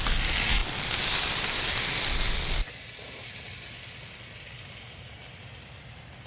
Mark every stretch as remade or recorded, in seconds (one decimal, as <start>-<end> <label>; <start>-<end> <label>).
0.0-6.3 recorded